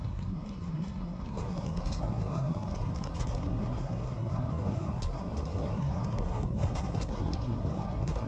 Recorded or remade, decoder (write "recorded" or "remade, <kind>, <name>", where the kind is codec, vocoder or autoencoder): remade, codec, SNAC